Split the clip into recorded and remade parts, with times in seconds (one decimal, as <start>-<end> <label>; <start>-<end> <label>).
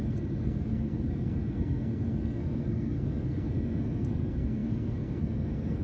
0.0-5.8 remade